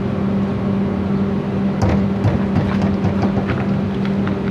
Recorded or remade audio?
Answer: recorded